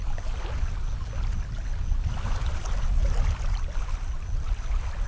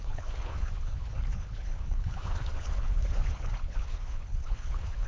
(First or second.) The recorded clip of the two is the first